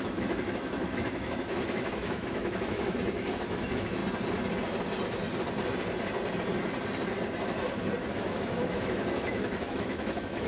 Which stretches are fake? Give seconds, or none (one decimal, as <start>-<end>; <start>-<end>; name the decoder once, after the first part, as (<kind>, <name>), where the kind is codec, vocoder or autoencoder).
0.0-4.0 (autoencoder, DAC-VAE); 8.1-10.5